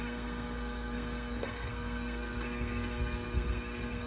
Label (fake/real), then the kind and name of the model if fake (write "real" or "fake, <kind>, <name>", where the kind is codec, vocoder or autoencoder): fake, codec, SNAC